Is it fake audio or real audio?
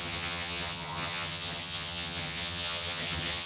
fake